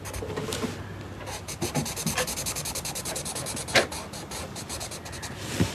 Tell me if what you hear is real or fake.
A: real